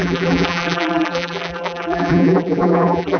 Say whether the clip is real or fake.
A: fake